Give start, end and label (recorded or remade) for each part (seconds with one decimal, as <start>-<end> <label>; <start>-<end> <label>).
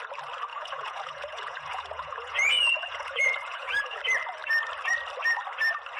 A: 0.0-0.5 recorded; 0.5-4.0 remade; 4.0-6.0 recorded